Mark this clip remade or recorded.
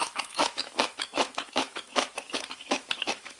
remade